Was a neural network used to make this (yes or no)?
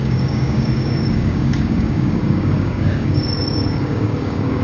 yes